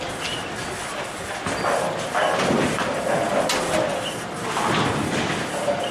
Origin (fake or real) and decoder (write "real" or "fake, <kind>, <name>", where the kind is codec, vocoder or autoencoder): real